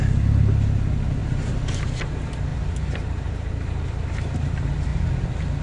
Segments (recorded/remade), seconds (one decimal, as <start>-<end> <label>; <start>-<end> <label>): 0.0-1.2 recorded; 1.2-2.0 remade; 2.0-2.5 recorded; 2.5-4.5 remade; 4.5-5.6 recorded